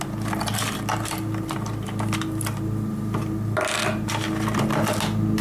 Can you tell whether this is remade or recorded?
recorded